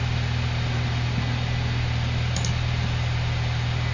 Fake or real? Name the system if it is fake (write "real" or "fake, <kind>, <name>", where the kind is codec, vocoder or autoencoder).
real